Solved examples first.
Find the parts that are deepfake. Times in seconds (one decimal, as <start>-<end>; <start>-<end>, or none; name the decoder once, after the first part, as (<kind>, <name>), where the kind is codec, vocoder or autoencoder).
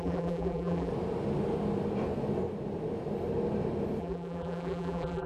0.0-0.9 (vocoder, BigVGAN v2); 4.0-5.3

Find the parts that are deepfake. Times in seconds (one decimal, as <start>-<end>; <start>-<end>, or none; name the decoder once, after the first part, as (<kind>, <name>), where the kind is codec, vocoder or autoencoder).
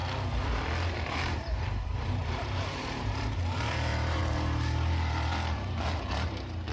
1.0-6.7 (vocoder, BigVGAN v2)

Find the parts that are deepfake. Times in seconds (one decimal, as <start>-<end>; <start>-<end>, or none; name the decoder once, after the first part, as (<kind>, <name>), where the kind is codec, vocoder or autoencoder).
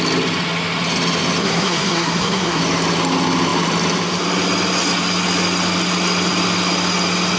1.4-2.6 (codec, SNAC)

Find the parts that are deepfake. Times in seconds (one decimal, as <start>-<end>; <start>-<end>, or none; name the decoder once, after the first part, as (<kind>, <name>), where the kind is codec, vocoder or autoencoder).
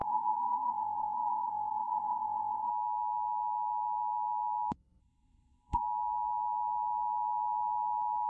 0.0-2.7 (codec, SNAC); 5.0-5.8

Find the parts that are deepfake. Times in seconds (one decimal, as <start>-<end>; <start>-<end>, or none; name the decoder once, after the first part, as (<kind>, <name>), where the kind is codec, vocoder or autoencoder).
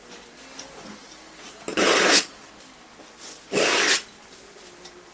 1.7-2.3 (codec, HILCodec)